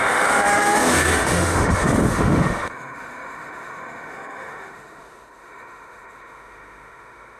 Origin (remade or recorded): remade